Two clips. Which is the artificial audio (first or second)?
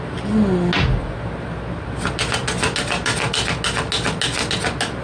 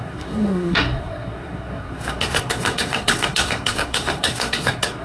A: second